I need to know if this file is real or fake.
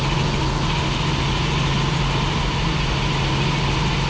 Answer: real